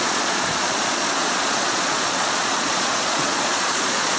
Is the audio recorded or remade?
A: remade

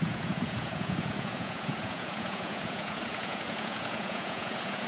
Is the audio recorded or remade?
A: remade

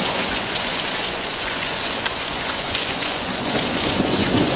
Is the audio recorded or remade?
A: remade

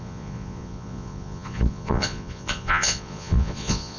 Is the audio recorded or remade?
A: remade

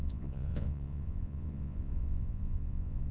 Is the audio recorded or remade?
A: remade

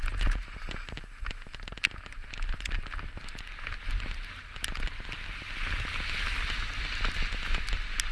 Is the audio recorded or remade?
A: recorded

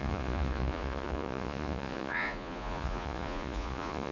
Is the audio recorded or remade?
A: remade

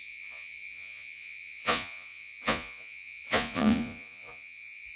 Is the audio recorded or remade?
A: remade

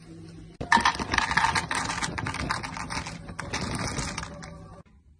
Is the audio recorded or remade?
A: recorded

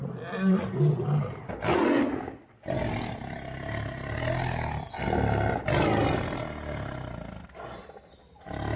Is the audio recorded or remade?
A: recorded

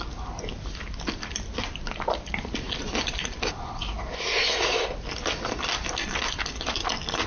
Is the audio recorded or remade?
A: recorded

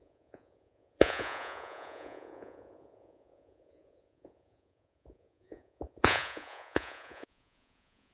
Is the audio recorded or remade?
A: remade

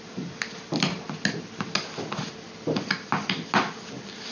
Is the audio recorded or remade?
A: recorded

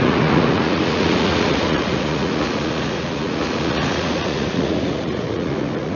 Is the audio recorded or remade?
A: remade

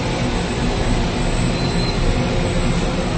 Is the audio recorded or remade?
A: recorded